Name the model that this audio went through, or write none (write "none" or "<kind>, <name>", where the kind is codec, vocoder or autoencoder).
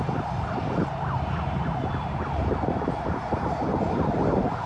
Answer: none